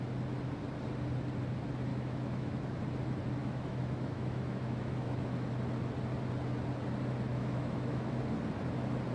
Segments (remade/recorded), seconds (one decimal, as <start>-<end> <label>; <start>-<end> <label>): 0.0-1.9 recorded; 1.9-2.8 remade; 2.8-3.4 recorded; 3.4-5.5 remade; 5.5-7.3 recorded; 7.3-8.2 remade; 8.2-9.1 recorded